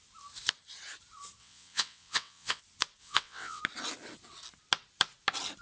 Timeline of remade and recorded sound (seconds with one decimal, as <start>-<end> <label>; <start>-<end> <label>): 0.0-1.4 recorded; 1.4-2.6 remade; 2.6-3.0 recorded; 3.0-3.6 remade; 3.6-5.6 recorded